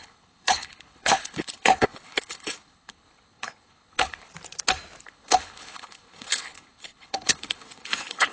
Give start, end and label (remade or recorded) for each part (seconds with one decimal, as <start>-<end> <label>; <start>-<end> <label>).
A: 0.0-4.3 remade; 4.3-5.0 recorded; 5.0-8.3 remade